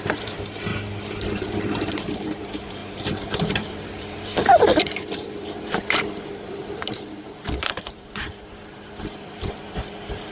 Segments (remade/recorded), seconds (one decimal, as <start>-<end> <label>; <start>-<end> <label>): 0.0-0.7 remade; 0.7-2.1 recorded; 2.1-10.3 remade